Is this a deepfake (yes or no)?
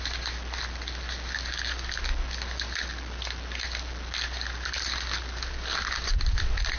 no